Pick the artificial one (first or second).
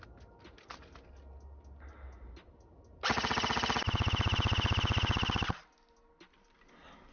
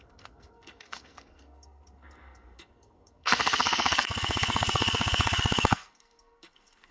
second